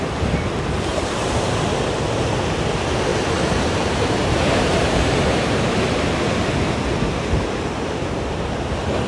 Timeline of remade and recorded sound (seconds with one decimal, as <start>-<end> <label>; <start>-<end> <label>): 0.0-0.9 recorded; 0.9-1.5 remade; 1.5-3.1 recorded; 3.1-6.8 remade; 6.8-9.1 recorded